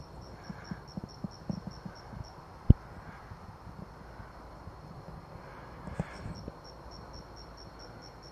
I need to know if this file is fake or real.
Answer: real